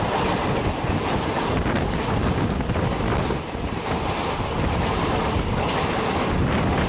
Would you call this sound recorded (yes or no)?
yes